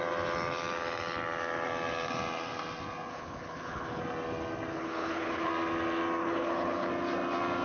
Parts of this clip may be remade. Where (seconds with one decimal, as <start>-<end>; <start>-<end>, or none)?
3.1-4.0; 4.7-5.5; 6.2-6.9